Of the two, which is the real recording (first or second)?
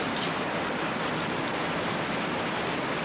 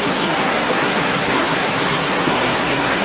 first